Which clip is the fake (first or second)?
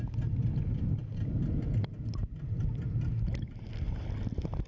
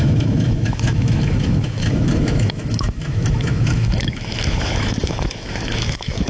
second